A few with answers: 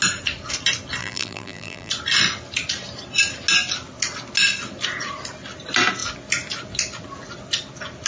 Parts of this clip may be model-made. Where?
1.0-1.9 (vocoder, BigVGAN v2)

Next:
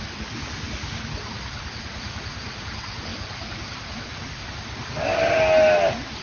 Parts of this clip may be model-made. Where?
none

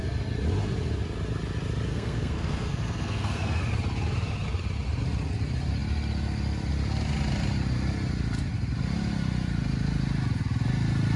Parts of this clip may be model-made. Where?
1.9-3.6 (codec, SNAC)

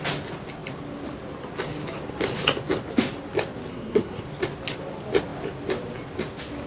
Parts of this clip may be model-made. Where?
3.7-4.2 (codec, SNAC)

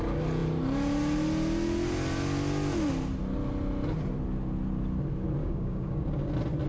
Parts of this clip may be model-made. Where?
5.4-6.3 (codec, DAC)

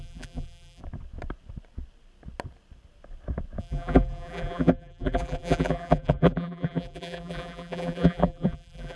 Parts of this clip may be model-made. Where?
0.0-0.8 (vocoder, BigVGAN v2); 3.6-9.0

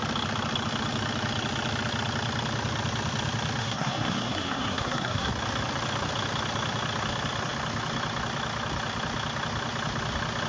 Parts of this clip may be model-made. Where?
3.6-5.3 (codec, SNAC)